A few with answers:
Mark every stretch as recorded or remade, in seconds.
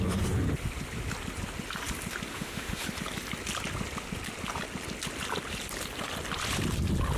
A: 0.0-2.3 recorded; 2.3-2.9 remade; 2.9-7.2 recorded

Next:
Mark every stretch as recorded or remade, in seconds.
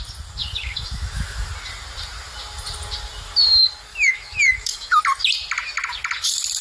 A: 0.0-0.4 recorded; 0.4-1.5 remade; 1.5-3.9 recorded; 3.9-5.0 remade; 5.0-6.6 recorded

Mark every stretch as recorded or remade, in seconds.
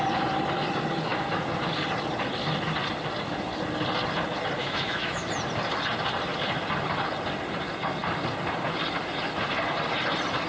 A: 0.0-4.6 recorded; 4.6-5.3 remade; 5.3-10.5 recorded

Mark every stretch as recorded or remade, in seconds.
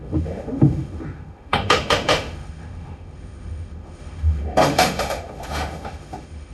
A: 0.0-6.5 remade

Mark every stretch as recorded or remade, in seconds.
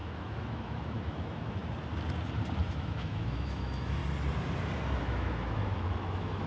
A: 0.0-1.6 remade; 1.6-2.6 recorded; 2.6-4.0 remade; 4.0-5.0 recorded; 5.0-6.5 remade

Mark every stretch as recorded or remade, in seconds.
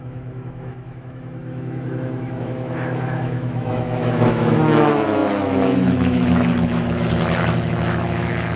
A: 0.0-8.6 remade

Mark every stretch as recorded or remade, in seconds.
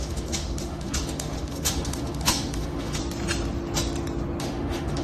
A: 0.0-3.0 remade; 3.0-4.4 recorded; 4.4-5.0 remade